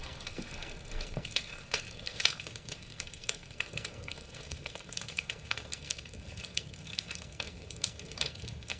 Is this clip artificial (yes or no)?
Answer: yes